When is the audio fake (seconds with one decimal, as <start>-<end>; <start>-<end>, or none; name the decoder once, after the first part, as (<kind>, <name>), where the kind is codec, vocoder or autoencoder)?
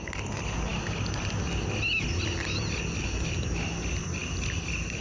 none